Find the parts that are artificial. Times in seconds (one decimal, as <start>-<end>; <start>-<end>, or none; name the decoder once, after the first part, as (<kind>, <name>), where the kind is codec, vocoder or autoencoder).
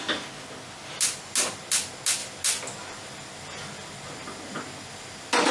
none